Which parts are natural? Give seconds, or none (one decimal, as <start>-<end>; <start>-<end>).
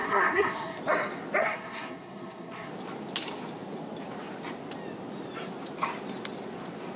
0.8-1.4; 2.7-7.0